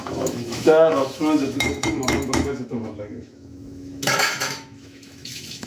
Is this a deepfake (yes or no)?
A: yes